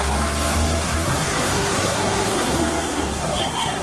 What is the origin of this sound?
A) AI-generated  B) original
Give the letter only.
A